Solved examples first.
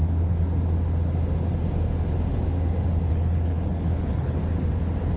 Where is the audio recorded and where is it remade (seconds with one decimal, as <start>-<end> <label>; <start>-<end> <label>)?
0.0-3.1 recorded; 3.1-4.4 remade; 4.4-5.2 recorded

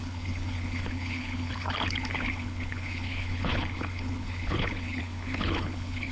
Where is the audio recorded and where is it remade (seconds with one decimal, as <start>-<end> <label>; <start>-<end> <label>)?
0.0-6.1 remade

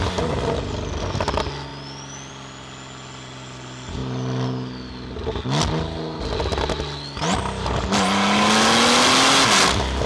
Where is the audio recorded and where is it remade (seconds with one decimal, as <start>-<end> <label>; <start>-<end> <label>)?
0.0-10.1 recorded

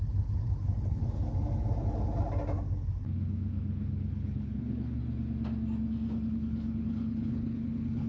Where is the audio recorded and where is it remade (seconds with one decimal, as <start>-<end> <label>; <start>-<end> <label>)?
0.0-1.0 remade; 1.0-3.0 recorded; 3.0-5.0 remade; 5.0-6.3 recorded; 6.3-8.1 remade

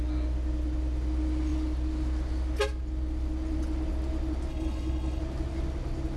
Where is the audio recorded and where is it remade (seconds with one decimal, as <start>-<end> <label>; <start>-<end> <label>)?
0.0-4.5 recorded; 4.5-5.2 remade; 5.2-6.2 recorded